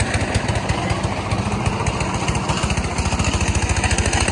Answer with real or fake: real